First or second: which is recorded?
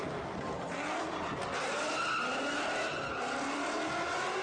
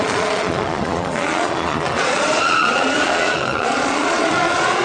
first